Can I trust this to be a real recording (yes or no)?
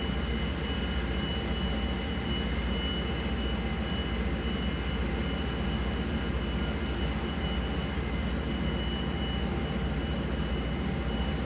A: yes